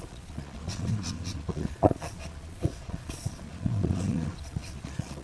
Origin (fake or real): fake